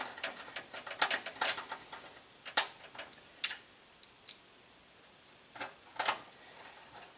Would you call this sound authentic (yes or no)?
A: yes